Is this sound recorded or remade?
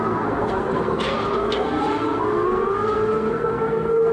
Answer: remade